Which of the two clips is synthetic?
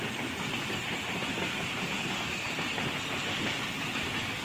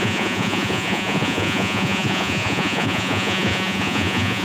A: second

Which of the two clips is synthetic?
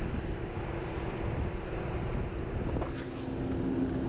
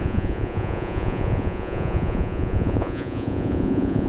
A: second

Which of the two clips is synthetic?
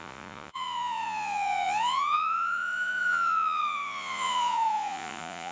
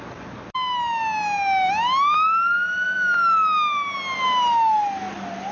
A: first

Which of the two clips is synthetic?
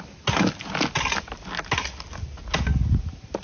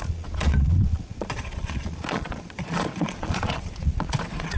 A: second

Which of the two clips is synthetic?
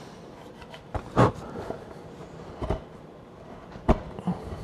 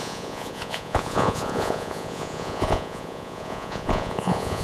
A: second